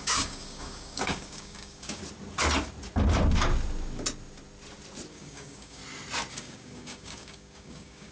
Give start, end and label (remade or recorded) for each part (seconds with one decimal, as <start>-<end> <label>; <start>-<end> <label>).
0.0-2.0 remade; 2.0-5.1 recorded; 5.1-5.8 remade; 5.8-6.3 recorded; 6.3-8.1 remade